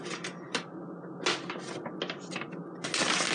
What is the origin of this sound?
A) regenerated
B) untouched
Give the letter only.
B